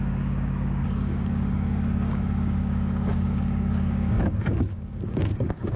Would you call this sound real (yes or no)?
no